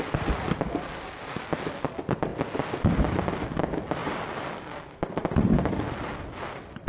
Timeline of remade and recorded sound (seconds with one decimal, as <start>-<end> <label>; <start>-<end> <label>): 0.0-4.0 recorded; 4.0-4.8 remade; 4.8-6.9 recorded